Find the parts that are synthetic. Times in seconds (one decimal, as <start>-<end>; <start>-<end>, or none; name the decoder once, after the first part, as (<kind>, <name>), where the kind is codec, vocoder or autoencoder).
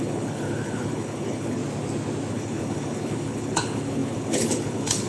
0.0-1.6 (codec, HILCodec); 2.3-5.1